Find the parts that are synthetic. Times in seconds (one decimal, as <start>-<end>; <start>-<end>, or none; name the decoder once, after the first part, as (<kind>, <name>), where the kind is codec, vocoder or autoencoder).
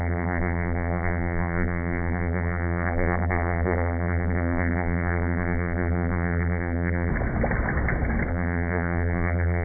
0.0-7.1 (vocoder, BigVGAN v2); 8.3-9.6